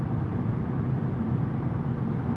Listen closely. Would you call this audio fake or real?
real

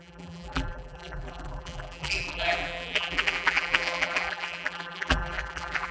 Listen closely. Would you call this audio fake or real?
fake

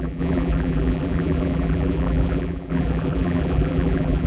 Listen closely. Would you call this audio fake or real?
fake